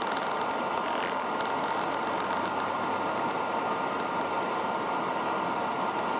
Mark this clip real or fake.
real